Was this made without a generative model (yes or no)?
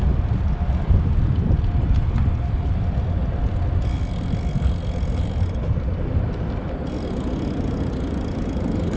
yes